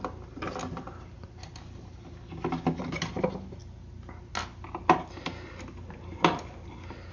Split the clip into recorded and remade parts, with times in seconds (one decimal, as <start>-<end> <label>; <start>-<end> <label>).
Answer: 0.0-7.1 recorded